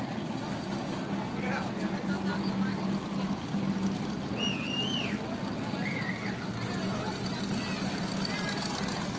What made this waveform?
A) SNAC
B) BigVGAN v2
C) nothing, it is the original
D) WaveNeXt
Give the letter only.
C